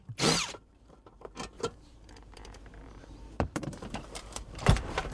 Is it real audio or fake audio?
fake